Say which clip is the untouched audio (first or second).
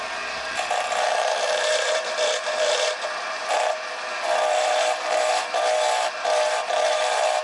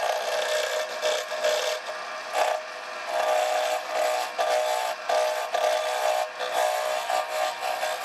second